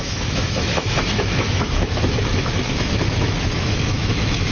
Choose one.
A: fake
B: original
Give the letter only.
A